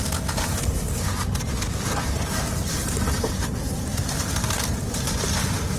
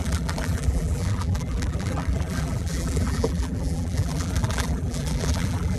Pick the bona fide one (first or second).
first